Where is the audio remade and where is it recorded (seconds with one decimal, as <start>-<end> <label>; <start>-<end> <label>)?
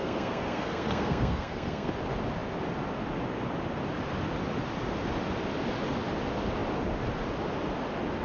0.0-1.9 remade; 1.9-8.2 recorded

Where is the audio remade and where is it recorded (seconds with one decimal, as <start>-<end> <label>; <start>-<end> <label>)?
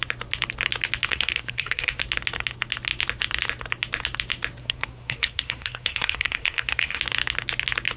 0.0-1.1 recorded; 1.1-2.0 remade; 2.0-4.6 recorded; 4.6-7.0 remade; 7.0-8.0 recorded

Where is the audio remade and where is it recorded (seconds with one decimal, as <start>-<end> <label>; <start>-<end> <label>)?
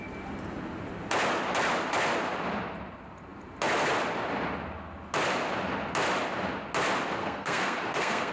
0.0-7.2 recorded; 7.2-8.3 remade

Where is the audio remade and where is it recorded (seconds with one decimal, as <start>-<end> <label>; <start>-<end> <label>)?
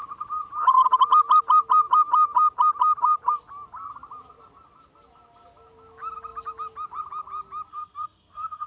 0.0-7.7 recorded; 7.7-8.7 remade